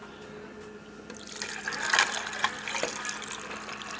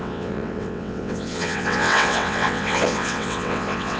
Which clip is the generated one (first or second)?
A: second